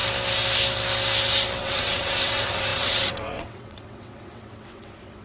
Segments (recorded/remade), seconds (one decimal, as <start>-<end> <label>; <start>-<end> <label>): 0.0-1.6 recorded; 1.6-5.2 remade